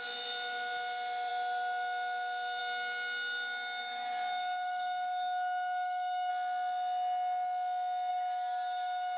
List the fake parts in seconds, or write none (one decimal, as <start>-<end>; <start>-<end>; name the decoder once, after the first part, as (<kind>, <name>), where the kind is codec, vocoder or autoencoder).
3.8-6.3 (codec, DAC); 8.1-9.2